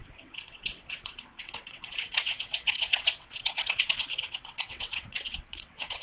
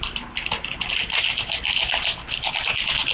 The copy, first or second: first